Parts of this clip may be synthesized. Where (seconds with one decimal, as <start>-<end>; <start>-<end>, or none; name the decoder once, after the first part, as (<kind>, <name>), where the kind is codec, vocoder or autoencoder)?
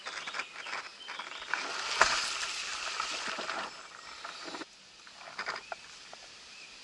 none